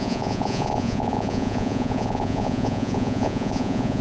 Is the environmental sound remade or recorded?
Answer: remade